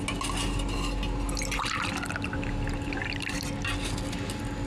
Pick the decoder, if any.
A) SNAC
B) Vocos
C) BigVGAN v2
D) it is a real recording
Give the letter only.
D